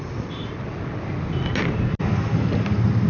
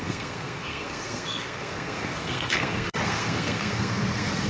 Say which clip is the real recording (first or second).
first